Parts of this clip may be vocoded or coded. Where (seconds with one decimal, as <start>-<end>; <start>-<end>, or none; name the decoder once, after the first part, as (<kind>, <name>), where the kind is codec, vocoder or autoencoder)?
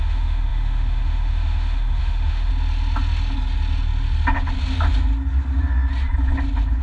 0.0-2.5 (autoencoder, DAC-VAE)